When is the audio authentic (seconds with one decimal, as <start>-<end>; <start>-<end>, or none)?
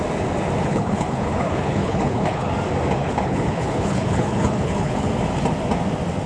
0.0-0.6; 2.5-3.0; 5.1-6.3